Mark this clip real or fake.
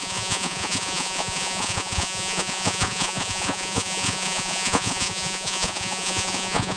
fake